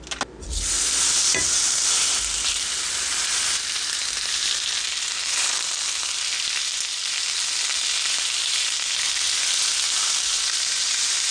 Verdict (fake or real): real